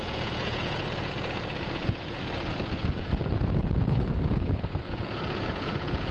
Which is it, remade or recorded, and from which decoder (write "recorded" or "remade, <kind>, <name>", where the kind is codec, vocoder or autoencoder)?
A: remade, vocoder, Vocos